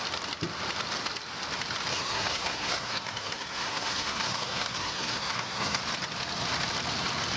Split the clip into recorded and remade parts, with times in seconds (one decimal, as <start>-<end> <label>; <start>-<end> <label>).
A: 0.0-1.9 recorded; 1.9-5.8 remade; 5.8-7.4 recorded